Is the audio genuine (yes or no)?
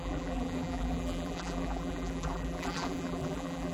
no